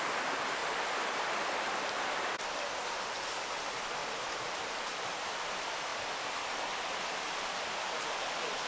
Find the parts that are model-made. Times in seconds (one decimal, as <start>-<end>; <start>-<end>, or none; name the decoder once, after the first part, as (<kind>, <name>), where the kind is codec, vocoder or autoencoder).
0.0-0.6 (vocoder, BigVGAN v2); 3.2-8.7